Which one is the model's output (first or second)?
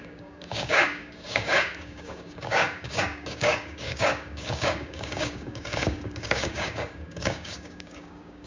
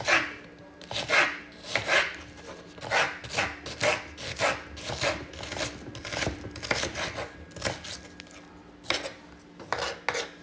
first